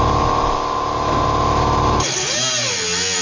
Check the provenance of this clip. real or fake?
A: real